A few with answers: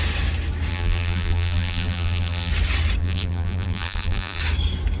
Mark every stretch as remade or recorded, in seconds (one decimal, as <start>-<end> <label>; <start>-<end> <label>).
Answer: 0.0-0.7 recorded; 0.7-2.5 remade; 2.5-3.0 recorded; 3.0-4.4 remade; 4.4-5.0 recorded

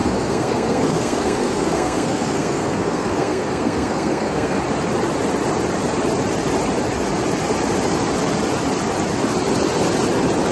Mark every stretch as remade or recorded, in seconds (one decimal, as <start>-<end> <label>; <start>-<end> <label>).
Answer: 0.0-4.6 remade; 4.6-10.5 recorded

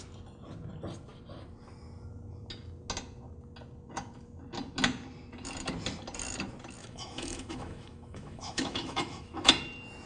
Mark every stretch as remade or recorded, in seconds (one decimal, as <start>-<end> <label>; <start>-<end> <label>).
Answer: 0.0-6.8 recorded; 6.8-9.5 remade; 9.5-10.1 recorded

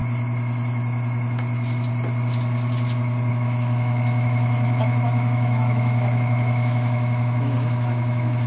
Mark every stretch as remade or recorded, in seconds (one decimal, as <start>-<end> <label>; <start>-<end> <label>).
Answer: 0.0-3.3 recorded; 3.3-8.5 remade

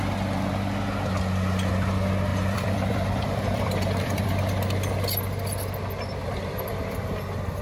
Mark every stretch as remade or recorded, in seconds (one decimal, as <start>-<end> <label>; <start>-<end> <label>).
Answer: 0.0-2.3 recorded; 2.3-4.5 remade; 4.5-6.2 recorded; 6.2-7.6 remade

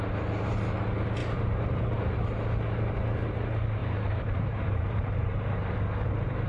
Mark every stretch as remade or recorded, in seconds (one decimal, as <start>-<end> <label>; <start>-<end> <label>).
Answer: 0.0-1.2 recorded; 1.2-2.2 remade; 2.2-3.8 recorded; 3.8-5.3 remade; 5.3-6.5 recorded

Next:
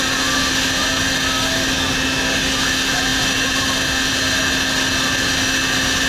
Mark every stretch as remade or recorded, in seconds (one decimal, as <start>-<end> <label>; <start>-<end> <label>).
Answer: 0.0-6.1 recorded

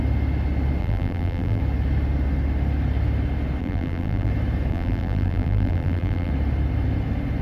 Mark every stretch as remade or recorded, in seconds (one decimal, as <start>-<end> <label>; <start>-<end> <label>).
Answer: 0.0-0.8 recorded; 0.8-1.6 remade; 1.6-3.6 recorded; 3.6-4.3 remade; 4.3-4.7 recorded; 4.7-6.3 remade; 6.3-7.4 recorded